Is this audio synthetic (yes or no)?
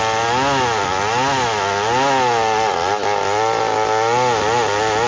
no